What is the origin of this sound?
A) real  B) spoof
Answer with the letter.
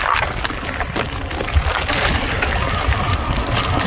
A